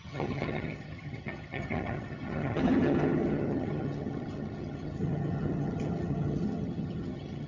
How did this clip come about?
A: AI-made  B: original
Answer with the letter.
A